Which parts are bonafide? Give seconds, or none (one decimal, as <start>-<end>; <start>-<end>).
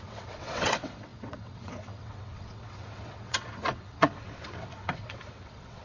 none